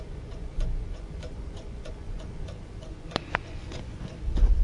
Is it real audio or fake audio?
fake